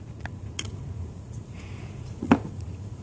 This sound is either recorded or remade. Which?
remade